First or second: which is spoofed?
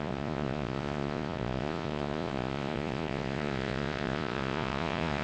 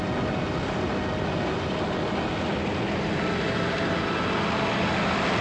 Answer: first